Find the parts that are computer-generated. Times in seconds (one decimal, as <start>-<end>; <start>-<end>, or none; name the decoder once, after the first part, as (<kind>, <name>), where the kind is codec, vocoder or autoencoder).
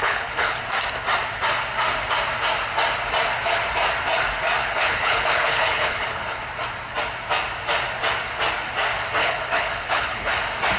0.0-0.6 (codec, HILCodec); 4.6-6.4; 9.2-10.3